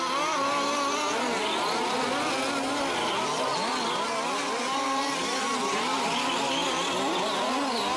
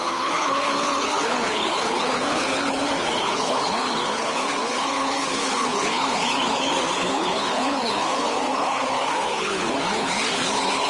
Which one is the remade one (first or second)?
second